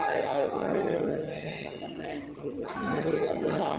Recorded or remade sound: remade